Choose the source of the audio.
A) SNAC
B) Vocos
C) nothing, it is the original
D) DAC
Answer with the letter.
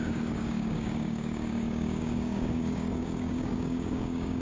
D